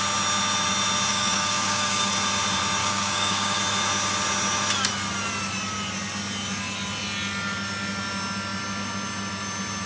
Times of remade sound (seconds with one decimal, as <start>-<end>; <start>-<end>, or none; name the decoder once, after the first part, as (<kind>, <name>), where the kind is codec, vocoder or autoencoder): 1.1-2.1 (codec, DAC); 2.8-3.6